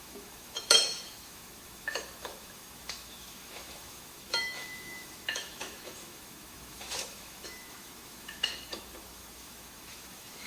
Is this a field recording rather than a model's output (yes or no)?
no